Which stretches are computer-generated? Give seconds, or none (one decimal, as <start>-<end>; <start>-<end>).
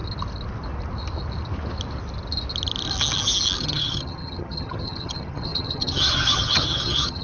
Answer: 3.6-7.2